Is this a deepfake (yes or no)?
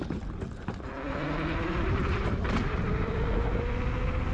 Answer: no